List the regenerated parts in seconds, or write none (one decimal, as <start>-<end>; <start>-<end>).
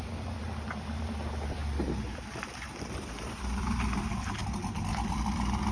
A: 0.0-1.6; 2.5-4.4; 5.1-5.7